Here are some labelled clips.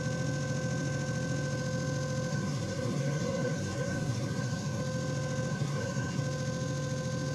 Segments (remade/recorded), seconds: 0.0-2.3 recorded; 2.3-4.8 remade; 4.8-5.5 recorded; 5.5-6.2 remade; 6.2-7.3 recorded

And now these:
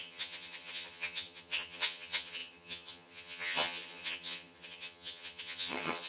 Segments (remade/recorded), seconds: 0.0-6.1 remade

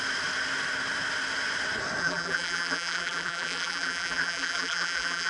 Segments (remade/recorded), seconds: 0.0-2.0 recorded; 2.0-5.3 remade

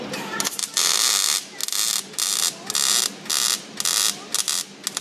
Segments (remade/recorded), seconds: 0.0-5.0 recorded